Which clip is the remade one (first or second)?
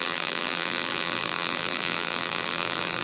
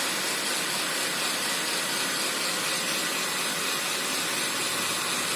first